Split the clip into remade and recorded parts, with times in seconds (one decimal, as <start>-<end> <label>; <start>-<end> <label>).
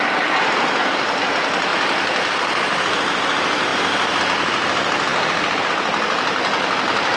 0.0-7.2 recorded